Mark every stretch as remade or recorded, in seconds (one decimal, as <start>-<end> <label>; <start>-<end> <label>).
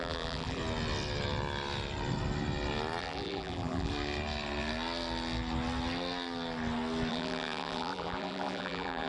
0.0-0.6 remade; 0.6-3.0 recorded; 3.0-3.9 remade; 3.9-7.1 recorded; 7.1-9.1 remade